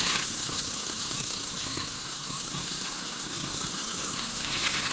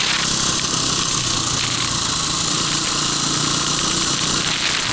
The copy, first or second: first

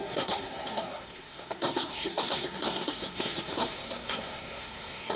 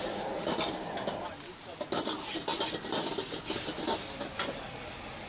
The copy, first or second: first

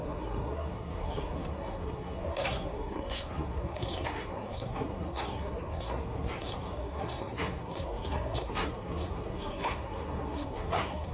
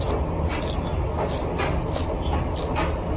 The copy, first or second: first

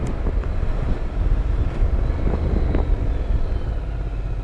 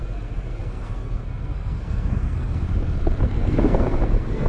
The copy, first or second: second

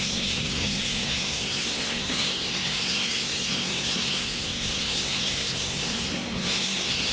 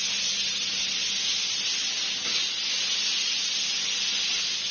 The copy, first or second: first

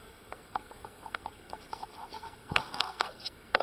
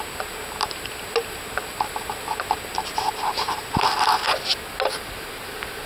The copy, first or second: first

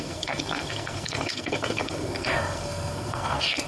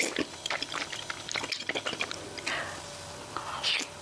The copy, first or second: first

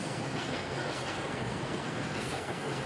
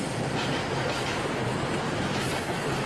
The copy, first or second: first